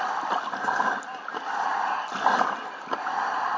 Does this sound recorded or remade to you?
recorded